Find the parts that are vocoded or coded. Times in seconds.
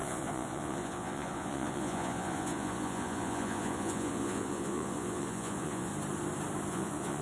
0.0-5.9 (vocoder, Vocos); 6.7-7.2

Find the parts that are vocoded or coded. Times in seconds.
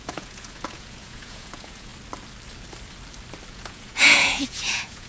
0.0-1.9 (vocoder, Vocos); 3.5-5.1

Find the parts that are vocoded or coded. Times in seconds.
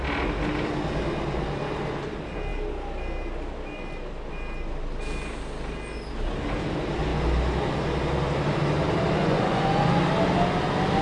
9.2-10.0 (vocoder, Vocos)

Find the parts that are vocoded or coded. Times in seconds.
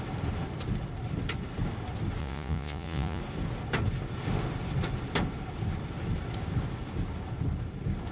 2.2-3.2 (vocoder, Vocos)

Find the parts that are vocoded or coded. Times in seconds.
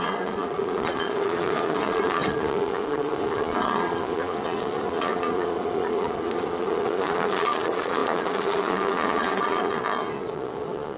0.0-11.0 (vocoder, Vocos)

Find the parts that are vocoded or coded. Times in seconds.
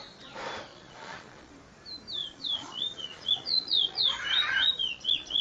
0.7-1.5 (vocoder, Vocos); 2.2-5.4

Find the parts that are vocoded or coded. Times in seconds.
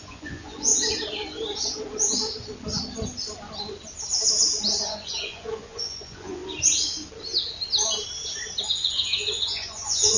0.0-0.7 (vocoder, Vocos); 4.8-6.4; 8.7-10.2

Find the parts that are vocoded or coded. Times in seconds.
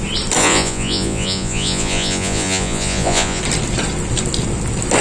0.4-3.4 (vocoder, Vocos)